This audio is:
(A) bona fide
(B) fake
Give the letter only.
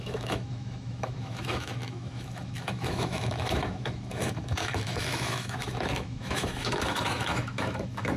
B